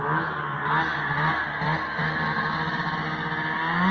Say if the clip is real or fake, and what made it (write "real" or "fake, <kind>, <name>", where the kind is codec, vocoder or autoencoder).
real